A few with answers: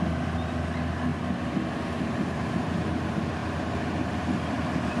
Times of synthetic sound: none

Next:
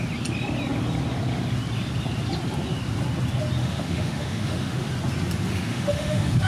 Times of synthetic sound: 3.6-4.9 (autoencoder, DAC-VAE); 5.5-6.5

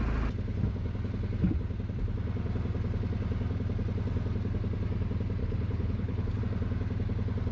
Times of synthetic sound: 5.4-6.4 (codec, HILCodec)